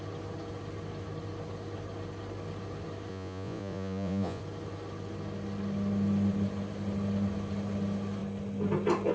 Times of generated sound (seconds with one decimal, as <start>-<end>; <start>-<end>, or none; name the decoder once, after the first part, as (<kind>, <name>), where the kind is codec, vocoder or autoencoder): 3.1-4.4 (vocoder, Vocos)